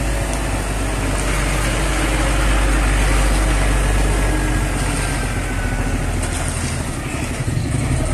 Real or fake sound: real